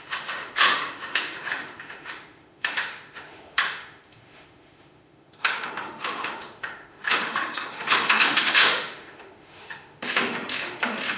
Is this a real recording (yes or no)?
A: no